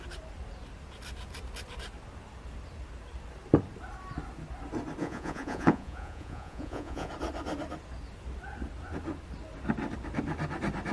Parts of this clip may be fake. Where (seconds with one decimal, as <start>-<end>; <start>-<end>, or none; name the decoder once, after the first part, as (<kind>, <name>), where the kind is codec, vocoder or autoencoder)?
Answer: 5.0-7.1 (vocoder, Vocos)